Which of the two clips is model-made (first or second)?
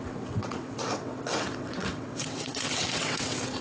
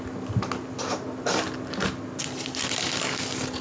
first